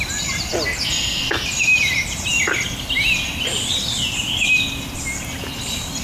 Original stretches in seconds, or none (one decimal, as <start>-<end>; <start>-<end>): 0.0-6.0